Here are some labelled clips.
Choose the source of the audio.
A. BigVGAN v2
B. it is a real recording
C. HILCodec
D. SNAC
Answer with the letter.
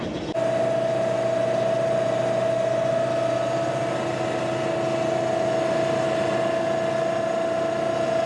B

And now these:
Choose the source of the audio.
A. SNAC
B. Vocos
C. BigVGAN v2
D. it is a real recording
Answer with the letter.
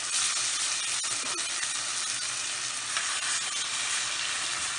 D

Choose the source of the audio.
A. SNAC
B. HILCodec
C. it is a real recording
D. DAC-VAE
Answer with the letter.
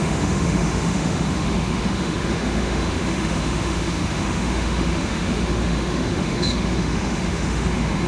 D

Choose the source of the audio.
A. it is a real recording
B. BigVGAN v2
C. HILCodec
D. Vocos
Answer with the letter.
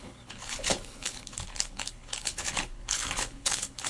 C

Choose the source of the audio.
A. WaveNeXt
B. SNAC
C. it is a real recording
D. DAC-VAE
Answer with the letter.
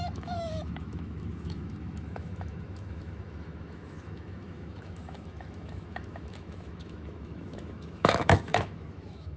D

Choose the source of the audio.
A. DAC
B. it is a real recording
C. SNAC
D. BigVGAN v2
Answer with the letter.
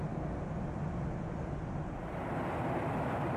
B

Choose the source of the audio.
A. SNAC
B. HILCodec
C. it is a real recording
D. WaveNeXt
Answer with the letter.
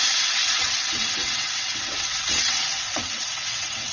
D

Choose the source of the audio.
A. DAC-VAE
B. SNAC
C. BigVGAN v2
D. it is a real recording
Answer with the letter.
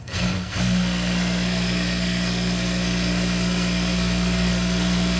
B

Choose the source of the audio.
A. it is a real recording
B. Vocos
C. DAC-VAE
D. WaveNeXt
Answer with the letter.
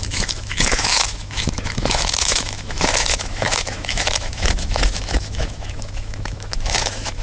C